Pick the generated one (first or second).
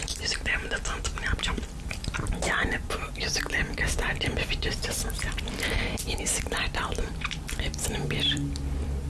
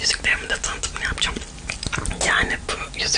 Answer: first